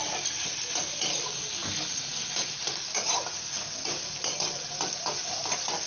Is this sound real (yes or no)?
yes